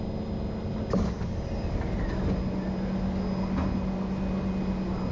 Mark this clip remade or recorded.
recorded